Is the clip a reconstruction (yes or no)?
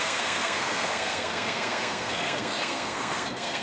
yes